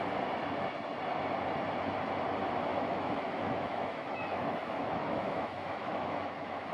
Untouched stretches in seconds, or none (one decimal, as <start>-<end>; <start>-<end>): 0.0-2.7